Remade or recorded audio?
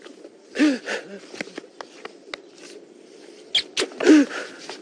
recorded